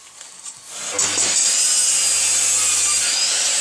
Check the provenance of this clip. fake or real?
real